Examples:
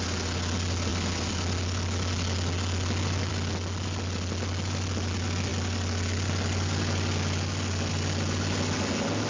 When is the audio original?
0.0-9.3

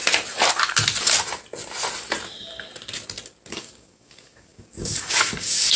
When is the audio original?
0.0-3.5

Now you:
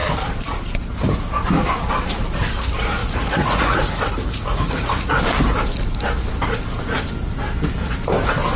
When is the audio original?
0.0-3.0; 5.2-6.8; 7.3-8.6